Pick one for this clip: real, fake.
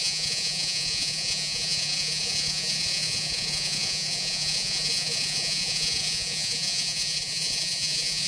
fake